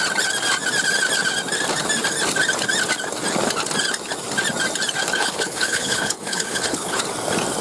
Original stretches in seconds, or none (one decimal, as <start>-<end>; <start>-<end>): 0.0-5.1; 7.0-7.6